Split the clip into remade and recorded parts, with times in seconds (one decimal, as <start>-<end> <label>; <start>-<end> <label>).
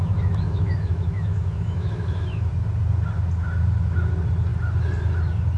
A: 0.0-2.5 remade; 2.5-5.6 recorded